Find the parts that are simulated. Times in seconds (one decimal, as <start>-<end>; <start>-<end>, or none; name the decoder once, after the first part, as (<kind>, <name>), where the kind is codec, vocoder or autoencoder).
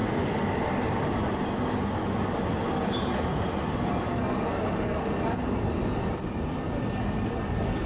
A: none